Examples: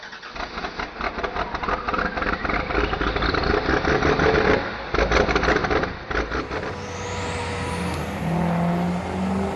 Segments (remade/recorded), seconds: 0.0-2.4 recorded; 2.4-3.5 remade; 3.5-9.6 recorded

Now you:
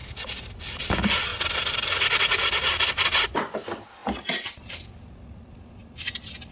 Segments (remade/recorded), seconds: 0.0-0.6 remade; 0.6-1.3 recorded; 1.3-2.9 remade; 2.9-4.0 recorded; 4.0-4.7 remade; 4.7-6.5 recorded